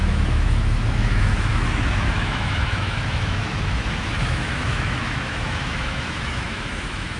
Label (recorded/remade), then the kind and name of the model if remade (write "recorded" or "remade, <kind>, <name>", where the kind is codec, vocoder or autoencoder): remade, autoencoder, DAC-VAE